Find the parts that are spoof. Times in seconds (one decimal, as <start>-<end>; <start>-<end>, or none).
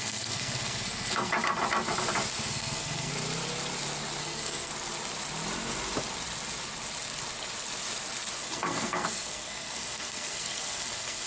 0.0-1.3; 2.5-3.1; 4.2-4.7; 8.4-11.3